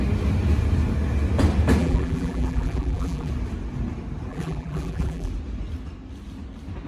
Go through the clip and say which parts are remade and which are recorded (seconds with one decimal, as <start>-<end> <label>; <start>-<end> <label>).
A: 0.0-1.8 recorded; 1.8-3.3 remade; 3.3-4.3 recorded; 4.3-5.3 remade; 5.3-6.9 recorded